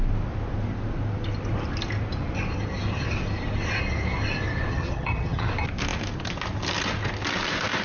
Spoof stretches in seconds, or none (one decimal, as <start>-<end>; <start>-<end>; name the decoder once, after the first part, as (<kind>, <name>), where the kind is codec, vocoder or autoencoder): 4.7-5.5 (vocoder, HiFi-GAN)